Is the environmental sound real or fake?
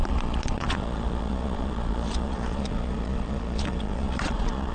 fake